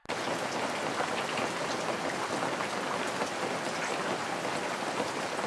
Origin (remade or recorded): recorded